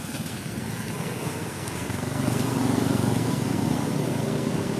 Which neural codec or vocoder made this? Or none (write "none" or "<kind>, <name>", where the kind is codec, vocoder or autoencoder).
codec, SNAC